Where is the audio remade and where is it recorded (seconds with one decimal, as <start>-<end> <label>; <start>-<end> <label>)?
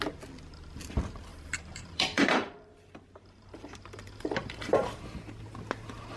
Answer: 0.0-1.3 recorded; 1.3-5.0 remade; 5.0-6.2 recorded